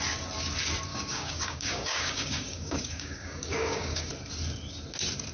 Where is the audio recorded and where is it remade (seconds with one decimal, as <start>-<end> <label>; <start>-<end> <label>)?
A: 0.0-0.9 recorded; 0.9-4.1 remade; 4.1-5.3 recorded